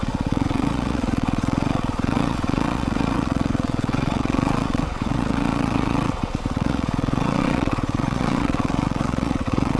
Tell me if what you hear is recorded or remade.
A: remade